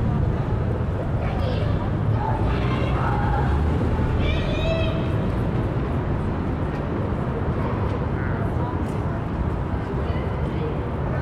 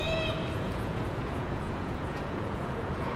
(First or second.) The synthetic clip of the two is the second